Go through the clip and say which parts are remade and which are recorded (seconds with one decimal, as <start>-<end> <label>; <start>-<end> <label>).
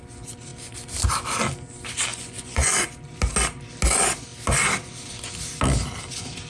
0.0-2.1 recorded; 2.1-2.7 remade; 2.7-6.5 recorded